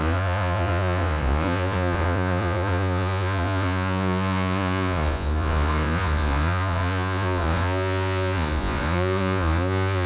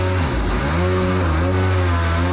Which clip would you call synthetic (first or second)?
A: first